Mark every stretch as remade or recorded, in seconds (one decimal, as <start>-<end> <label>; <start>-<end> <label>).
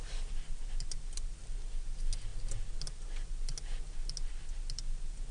0.0-5.3 recorded